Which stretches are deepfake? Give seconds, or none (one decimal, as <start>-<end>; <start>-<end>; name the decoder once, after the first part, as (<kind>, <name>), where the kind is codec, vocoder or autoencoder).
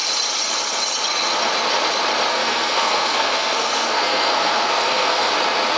2.3-5.3 (codec, SNAC)